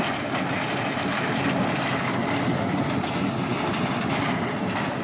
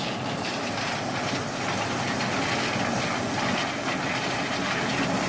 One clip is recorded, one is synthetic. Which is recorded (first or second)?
second